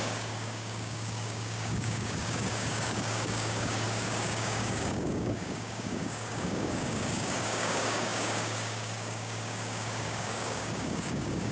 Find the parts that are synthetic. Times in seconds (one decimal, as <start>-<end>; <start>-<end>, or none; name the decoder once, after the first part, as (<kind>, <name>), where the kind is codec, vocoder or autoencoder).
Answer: 0.0-11.5 (codec, DAC)

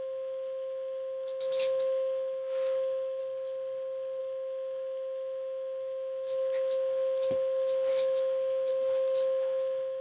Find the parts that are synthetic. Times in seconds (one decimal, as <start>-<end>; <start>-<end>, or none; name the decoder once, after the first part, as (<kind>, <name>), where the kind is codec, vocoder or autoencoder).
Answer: 0.0-3.2 (autoencoder, DAC-VAE); 4.2-10.0

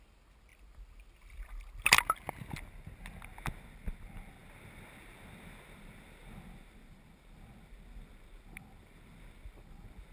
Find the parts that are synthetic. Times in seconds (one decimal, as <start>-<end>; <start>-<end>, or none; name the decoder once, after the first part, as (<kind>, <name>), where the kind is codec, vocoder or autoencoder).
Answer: 0.5-2.7 (vocoder, BigVGAN v2)

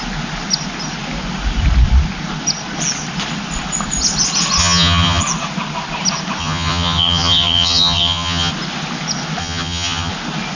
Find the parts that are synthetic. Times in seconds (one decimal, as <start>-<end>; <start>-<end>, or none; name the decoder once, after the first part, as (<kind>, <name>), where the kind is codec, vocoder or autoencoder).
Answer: 4.6-5.2 (vocoder, HiFi-GAN); 6.4-8.5; 9.4-10.1

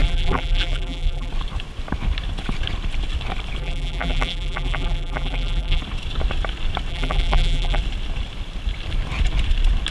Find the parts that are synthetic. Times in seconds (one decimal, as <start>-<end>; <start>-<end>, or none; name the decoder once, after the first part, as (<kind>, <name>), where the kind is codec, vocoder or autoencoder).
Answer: 0.0-1.3 (vocoder, BigVGAN v2); 3.6-5.8; 6.9-7.8

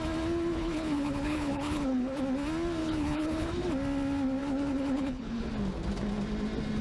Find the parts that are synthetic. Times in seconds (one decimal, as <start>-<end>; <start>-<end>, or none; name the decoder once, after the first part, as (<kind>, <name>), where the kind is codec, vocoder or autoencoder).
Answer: 0.5-2.2 (codec, HILCodec); 2.8-3.5; 4.4-5.5

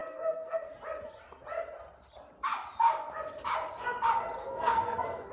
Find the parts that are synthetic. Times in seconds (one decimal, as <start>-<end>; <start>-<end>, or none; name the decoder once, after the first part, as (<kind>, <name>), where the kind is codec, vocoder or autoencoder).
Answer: 0.0-0.7 (codec, SNAC); 4.4-5.3

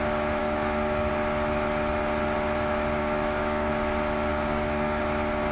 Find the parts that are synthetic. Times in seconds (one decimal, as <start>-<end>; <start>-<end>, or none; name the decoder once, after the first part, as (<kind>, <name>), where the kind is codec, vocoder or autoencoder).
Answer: 0.4-1.1 (codec, DAC); 3.0-3.7; 4.3-5.0